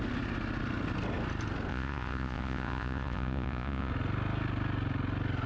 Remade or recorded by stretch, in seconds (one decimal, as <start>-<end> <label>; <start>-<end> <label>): 0.0-1.7 recorded; 1.7-3.9 remade; 3.9-5.5 recorded